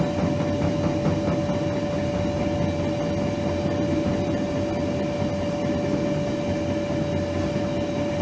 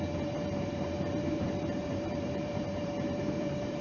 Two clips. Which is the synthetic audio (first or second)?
second